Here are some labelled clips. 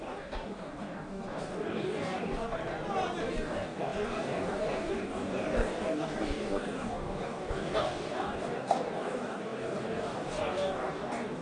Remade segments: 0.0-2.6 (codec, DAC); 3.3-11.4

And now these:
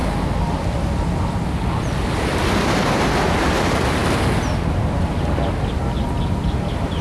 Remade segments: none

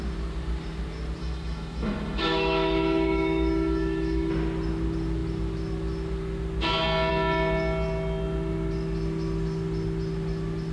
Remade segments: 1.2-4.3 (autoencoder, DAC-VAE)

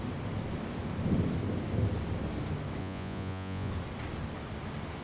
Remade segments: 2.8-3.7 (vocoder, Vocos)

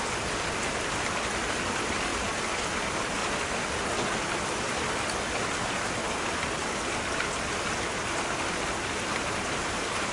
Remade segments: 0.0-2.1 (vocoder, BigVGAN v2); 2.6-3.2; 4.1-5.4; 9.2-10.1